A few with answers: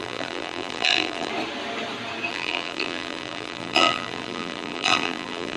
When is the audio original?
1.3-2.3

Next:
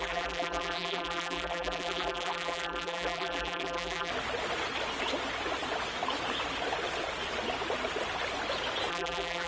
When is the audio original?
4.1-8.9

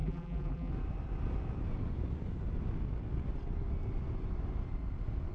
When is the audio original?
0.7-5.3

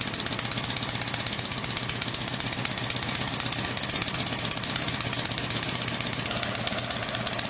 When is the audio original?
0.0-2.2; 6.7-7.5

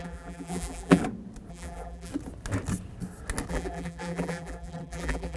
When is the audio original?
1.0-1.5; 2.1-3.5

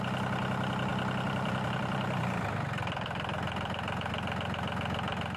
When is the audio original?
0.0-0.9; 4.1-5.4

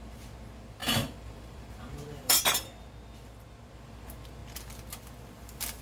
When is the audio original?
0.0-0.8; 2.4-5.8

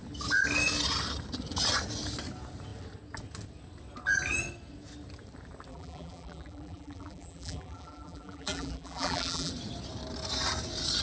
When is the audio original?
0.0-5.7; 9.5-11.0